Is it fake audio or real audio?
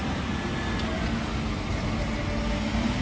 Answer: real